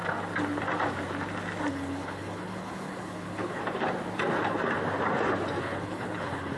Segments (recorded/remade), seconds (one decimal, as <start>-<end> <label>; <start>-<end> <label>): 0.0-1.7 recorded; 1.7-3.6 remade; 3.6-5.6 recorded; 5.6-6.6 remade